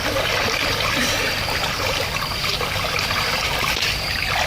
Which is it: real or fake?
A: real